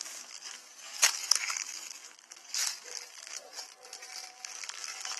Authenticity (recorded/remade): remade